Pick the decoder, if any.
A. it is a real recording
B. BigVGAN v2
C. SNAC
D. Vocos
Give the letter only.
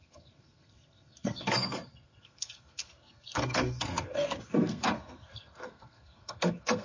C